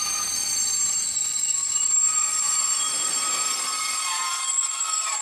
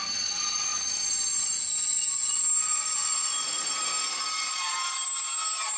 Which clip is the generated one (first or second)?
first